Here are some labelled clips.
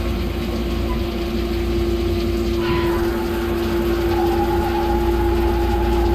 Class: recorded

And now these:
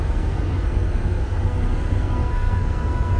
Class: remade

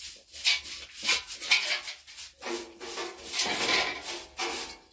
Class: recorded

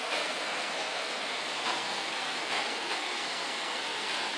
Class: remade